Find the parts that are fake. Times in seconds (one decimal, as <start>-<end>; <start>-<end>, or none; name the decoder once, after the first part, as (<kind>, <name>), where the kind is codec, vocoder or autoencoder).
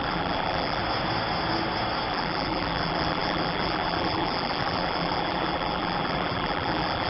0.0-0.8 (vocoder, BigVGAN v2); 2.1-7.1